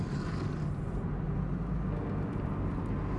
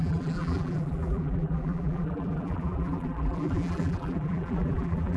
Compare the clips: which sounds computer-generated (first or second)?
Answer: second